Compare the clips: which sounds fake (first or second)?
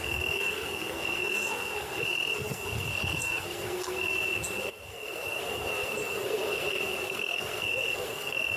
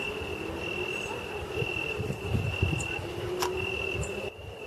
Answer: first